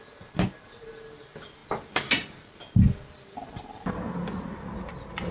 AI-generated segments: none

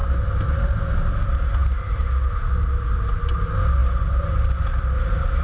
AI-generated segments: 1.6-3.0 (vocoder, BigVGAN v2)

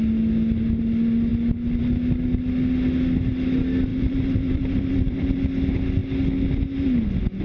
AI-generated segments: 3.9-5.4 (vocoder, BigVGAN v2)